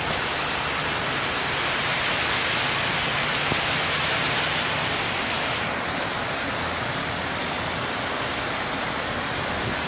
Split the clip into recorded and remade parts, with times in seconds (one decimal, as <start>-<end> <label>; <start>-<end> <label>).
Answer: 0.0-9.9 recorded